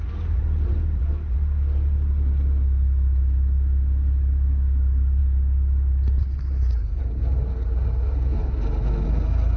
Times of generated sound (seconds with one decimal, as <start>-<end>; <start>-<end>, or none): none